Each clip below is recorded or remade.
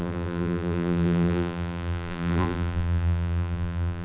remade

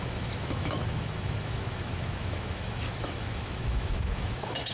remade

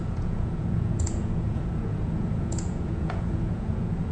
remade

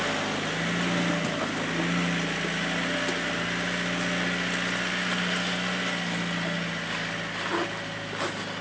recorded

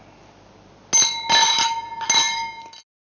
recorded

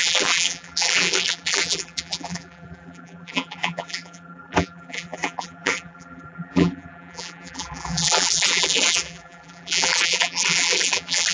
remade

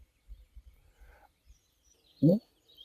remade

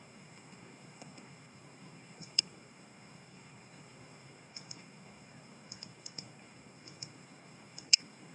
remade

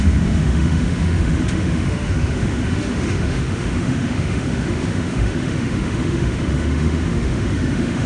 remade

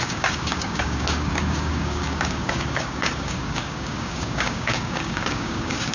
remade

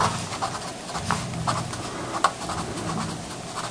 recorded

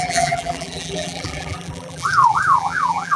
remade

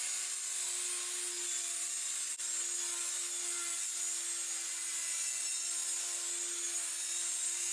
recorded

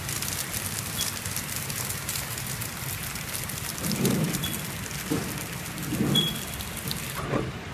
recorded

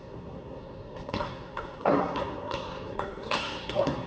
remade